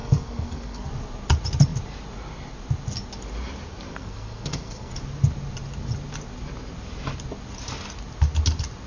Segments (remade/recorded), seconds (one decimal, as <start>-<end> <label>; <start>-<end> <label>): 0.0-0.9 remade; 0.9-3.9 recorded; 3.9-4.9 remade; 4.9-8.9 recorded